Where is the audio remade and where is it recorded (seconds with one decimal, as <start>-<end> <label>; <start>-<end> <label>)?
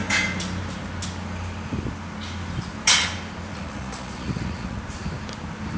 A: 0.0-3.5 recorded; 3.5-4.8 remade; 4.8-5.8 recorded